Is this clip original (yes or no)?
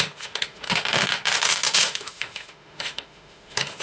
no